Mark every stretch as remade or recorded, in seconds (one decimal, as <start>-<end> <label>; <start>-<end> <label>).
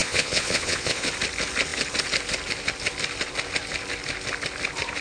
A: 0.0-1.1 remade; 1.1-5.0 recorded